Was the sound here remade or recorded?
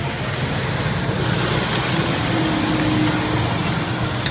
recorded